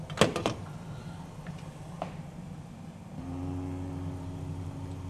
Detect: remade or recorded recorded